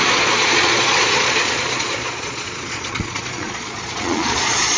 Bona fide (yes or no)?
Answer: no